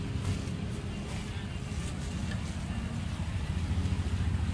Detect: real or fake real